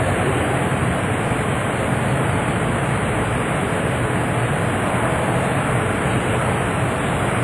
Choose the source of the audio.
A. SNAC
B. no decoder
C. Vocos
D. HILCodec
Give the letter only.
B